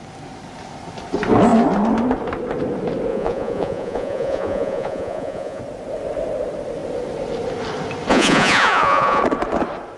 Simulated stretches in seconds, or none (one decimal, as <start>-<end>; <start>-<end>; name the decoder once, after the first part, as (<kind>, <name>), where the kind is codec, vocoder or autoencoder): 3.1-5.6 (vocoder, Vocos); 8.1-9.2